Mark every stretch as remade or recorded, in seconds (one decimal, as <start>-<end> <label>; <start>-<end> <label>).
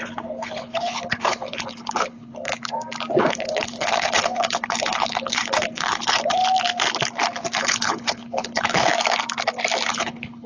0.0-2.5 remade; 2.5-3.2 recorded; 3.2-6.4 remade; 6.4-7.6 recorded; 7.6-8.9 remade; 8.9-9.9 recorded; 9.9-10.5 remade